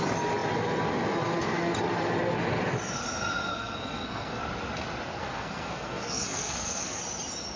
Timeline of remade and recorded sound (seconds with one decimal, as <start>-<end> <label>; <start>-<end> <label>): 0.0-3.5 recorded; 3.5-4.4 remade; 4.4-5.2 recorded; 5.2-7.0 remade; 7.0-7.6 recorded